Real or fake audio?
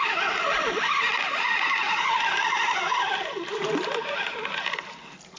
real